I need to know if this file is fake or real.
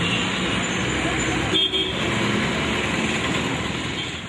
real